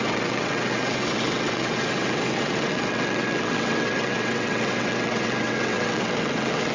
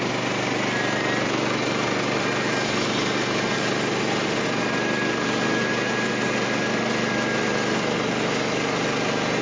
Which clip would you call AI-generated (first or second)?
first